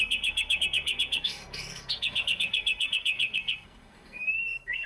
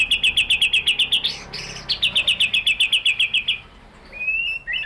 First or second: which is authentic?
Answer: second